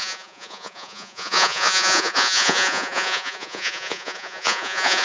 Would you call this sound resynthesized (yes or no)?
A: yes